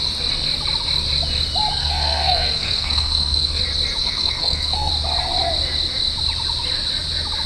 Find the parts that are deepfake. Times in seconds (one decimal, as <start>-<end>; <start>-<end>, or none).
1.8-3.6; 4.0-4.9